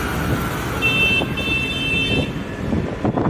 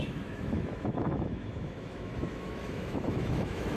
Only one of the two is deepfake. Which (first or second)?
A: second